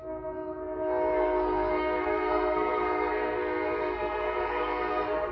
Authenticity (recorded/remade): remade